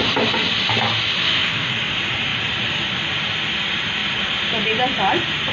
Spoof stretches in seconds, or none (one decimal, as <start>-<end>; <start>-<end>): 1.2-1.7